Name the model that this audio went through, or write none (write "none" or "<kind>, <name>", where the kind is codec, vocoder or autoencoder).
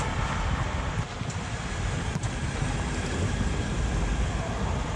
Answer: none